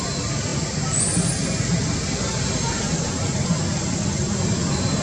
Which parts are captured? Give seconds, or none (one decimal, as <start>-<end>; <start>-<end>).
0.0-5.0

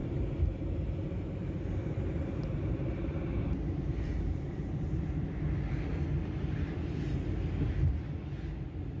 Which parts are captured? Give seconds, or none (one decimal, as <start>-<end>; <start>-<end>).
5.0-9.0

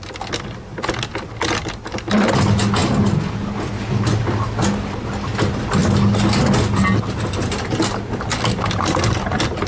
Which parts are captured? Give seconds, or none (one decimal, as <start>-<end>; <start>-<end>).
0.0-9.7